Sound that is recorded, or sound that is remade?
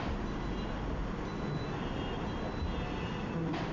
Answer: recorded